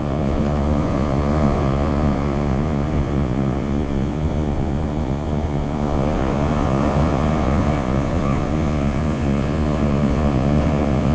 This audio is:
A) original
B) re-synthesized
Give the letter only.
B